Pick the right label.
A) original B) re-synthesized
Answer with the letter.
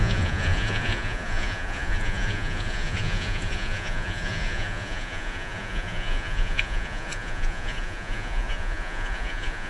B